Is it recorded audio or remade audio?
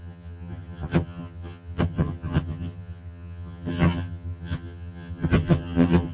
remade